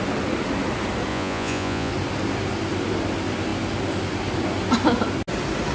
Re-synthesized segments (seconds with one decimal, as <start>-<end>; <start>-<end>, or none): 1.1-1.9